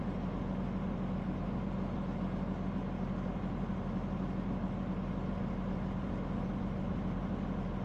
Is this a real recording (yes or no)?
yes